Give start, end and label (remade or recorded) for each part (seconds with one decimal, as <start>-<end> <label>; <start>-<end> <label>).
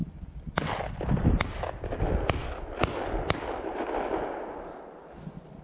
0.0-5.6 recorded